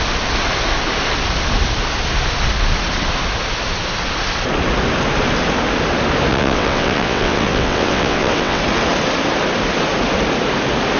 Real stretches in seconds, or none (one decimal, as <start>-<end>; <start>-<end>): 0.0-6.3; 8.6-11.0